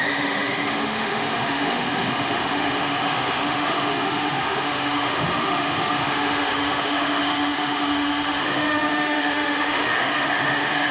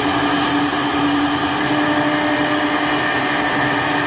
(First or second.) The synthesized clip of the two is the first